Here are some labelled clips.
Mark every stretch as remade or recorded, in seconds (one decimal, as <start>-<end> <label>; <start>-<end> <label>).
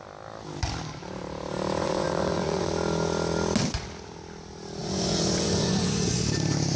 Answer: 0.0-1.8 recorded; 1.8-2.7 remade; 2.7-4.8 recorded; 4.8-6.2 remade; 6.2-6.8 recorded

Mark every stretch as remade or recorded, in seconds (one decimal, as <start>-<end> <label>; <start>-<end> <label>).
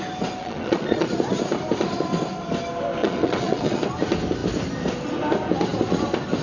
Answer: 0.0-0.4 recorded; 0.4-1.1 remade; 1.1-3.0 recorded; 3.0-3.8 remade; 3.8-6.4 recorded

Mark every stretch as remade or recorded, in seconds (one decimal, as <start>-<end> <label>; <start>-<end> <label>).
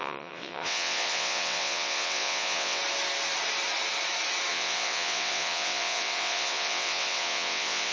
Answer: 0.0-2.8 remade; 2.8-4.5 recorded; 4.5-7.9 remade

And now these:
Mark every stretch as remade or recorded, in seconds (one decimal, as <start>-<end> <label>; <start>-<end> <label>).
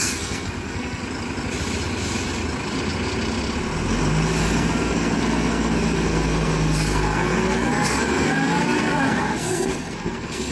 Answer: 0.0-1.0 remade; 1.0-4.4 recorded; 4.4-10.5 remade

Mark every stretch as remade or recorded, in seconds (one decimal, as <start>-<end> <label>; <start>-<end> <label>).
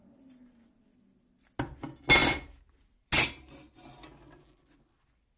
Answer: 0.0-5.4 recorded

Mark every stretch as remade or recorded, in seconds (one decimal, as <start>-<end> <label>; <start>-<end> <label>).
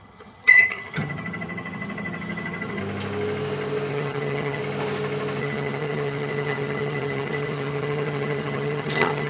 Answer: 0.0-2.8 remade; 2.8-3.9 recorded; 3.9-4.6 remade; 4.6-5.4 recorded; 5.4-9.3 remade